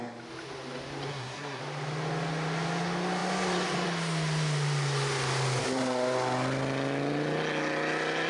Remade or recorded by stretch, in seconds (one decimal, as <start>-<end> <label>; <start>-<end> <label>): 0.0-1.1 recorded; 1.1-1.6 remade; 1.6-8.3 recorded